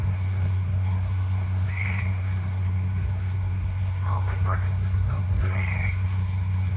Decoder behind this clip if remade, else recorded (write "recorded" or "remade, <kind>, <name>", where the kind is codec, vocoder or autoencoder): remade, codec, SNAC